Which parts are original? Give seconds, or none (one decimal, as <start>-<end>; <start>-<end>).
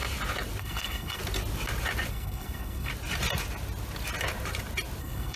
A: 0.0-0.6; 1.2-2.1; 2.9-5.0